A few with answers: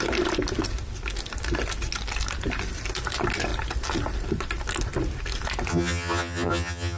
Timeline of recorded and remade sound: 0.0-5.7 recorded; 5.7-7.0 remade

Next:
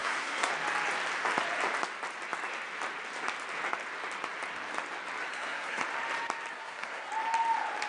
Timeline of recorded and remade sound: 0.0-0.5 remade; 0.5-5.3 recorded; 5.3-5.8 remade; 5.8-6.5 recorded; 6.5-7.1 remade; 7.1-7.9 recorded

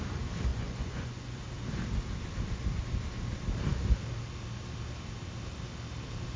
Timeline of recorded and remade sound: 0.0-0.5 recorded; 0.5-1.4 remade; 1.4-6.4 recorded

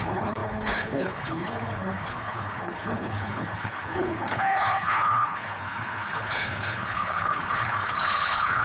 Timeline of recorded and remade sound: 0.0-8.6 remade

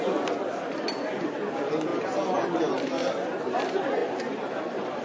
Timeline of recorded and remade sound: 0.0-5.0 recorded

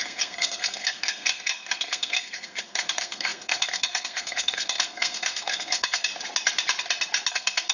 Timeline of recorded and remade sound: 0.0-6.1 remade; 6.1-7.3 recorded; 7.3-7.7 remade

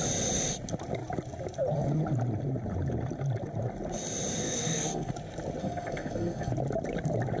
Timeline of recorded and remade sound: 0.0-4.4 recorded; 4.4-5.1 remade; 5.1-5.6 recorded; 5.6-6.5 remade; 6.5-7.4 recorded